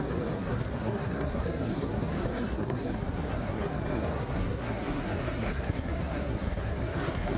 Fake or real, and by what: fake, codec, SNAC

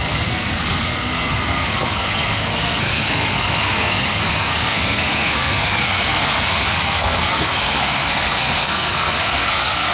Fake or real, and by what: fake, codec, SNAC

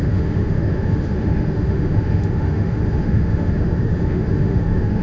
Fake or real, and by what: fake, autoencoder, DAC-VAE